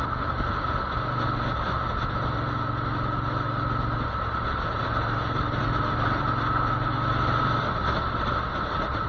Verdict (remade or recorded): recorded